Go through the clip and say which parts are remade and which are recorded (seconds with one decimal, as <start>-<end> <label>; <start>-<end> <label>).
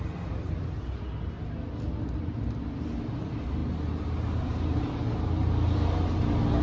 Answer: 0.0-6.6 recorded